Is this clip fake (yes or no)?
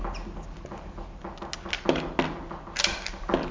no